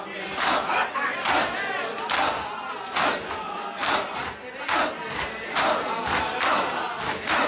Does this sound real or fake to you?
real